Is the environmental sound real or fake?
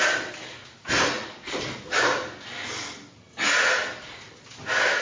real